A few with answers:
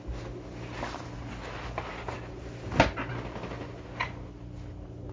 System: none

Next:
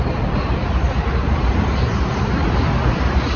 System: vocoder, BigVGAN v2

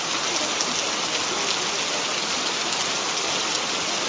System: none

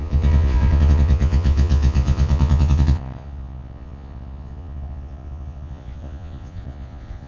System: vocoder, Vocos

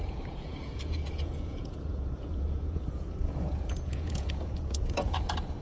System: vocoder, Vocos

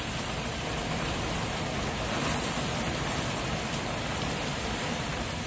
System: none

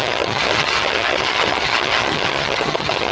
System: vocoder, HiFi-GAN